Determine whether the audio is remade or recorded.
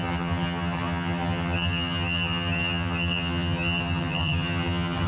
remade